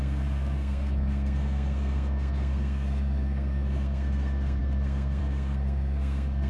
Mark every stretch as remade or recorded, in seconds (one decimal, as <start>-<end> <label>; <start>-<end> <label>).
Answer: 0.0-6.5 remade